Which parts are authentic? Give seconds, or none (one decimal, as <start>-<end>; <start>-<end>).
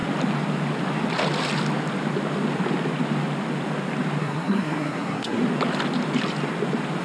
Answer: 0.0-4.2; 5.4-7.0